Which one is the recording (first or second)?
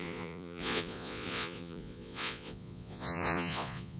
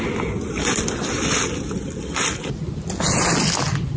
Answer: second